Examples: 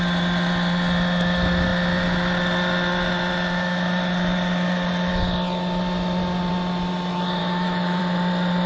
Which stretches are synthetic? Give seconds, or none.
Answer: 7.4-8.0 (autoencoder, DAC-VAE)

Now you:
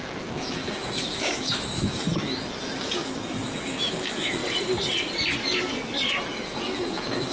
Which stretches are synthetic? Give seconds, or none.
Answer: 0.0-4.4 (autoencoder, DAC-VAE); 6.2-7.3

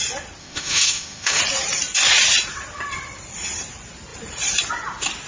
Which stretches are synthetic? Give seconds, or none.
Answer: 0.4-1.4 (autoencoder, DAC-VAE)

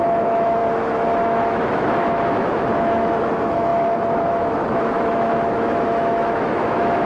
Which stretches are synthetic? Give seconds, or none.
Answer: 0.0-7.1 (autoencoder, DAC-VAE)

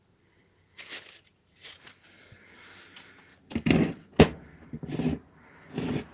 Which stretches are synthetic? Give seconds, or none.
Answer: none